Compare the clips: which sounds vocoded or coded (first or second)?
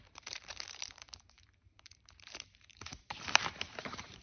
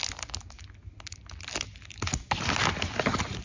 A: first